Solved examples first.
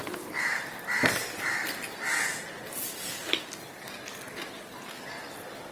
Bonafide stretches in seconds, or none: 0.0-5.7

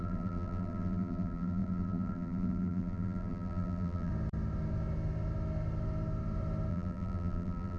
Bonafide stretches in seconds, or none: 4.1-6.7

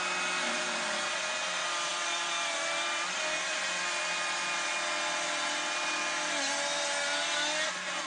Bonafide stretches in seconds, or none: 0.0-1.9; 3.6-8.1

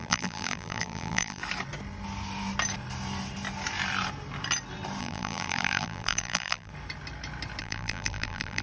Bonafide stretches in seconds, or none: 1.4-5.0; 6.7-7.6

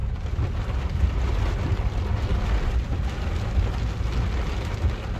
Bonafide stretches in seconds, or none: 0.0-5.2

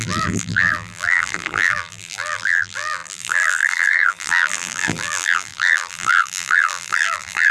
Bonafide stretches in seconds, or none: none

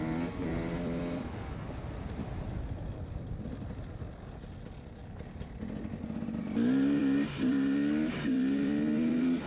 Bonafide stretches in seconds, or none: 0.0-0.5; 1.2-7.0

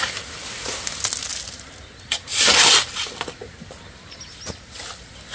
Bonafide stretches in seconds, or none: 0.0-5.3